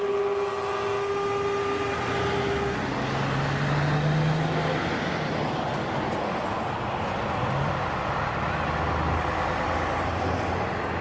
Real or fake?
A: real